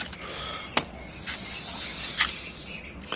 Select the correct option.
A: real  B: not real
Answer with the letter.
A